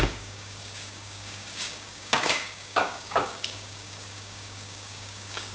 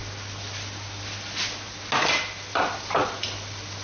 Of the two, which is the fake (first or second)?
first